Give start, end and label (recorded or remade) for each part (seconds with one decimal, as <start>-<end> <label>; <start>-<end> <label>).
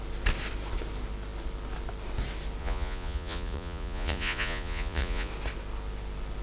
0.0-2.6 recorded; 2.6-5.3 remade; 5.3-6.4 recorded